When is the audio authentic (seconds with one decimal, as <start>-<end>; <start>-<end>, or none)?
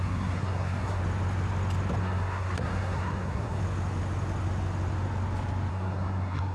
1.0-2.0; 3.6-5.7